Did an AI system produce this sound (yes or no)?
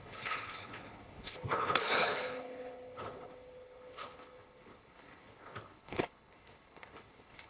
yes